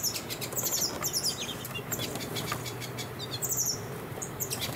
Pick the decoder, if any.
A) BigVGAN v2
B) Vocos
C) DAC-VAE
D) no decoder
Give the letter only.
A